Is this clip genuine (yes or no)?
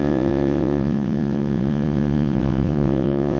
no